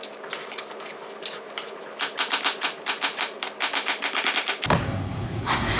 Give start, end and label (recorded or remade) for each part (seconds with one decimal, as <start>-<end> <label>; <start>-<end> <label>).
0.0-4.8 recorded; 4.8-5.8 remade